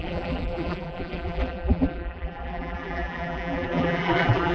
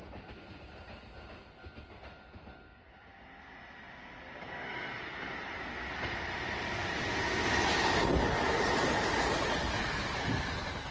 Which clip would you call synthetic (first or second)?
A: first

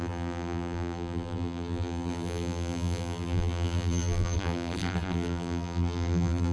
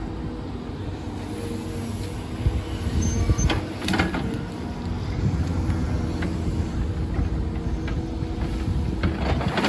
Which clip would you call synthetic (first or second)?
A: first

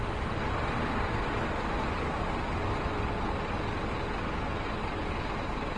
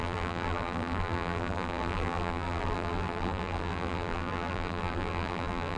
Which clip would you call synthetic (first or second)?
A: second